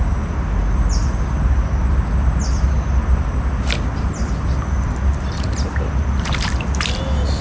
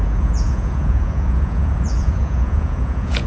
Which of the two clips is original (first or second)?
first